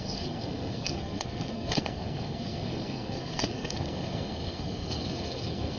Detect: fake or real fake